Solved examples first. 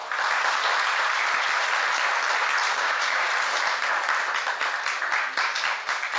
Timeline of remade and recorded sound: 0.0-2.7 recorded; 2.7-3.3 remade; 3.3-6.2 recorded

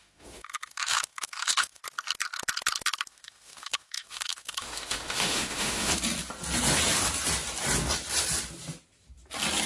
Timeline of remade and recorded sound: 0.0-1.8 remade; 1.8-3.1 recorded; 3.1-5.9 remade; 5.9-9.7 recorded

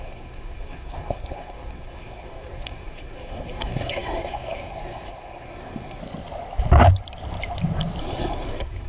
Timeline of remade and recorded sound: 0.0-6.0 remade; 6.0-8.0 recorded; 8.0-8.9 remade

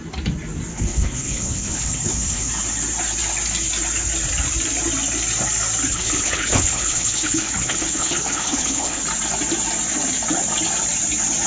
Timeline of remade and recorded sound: 0.0-0.7 recorded; 0.7-2.5 remade; 2.5-5.9 recorded; 5.9-9.0 remade; 9.0-11.5 recorded

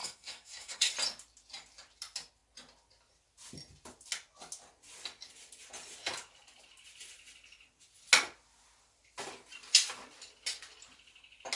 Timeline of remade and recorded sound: 0.0-0.9 remade; 0.9-11.6 recorded

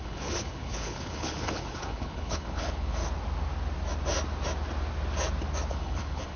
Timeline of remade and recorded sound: 0.0-3.0 remade; 3.0-5.7 recorded; 5.7-6.4 remade

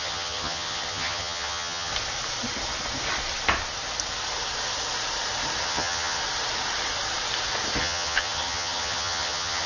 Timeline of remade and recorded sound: 0.0-1.9 remade; 1.9-5.6 recorded; 5.6-6.2 remade; 6.2-7.8 recorded; 7.8-9.7 remade

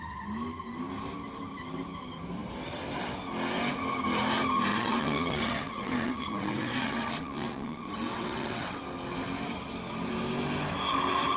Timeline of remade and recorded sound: 0.0-4.7 recorded; 4.7-8.8 remade; 8.8-11.4 recorded